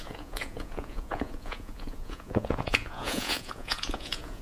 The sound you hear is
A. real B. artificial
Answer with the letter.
B